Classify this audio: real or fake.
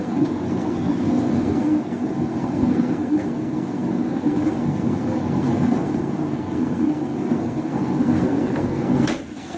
fake